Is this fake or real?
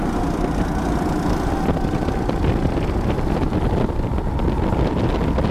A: real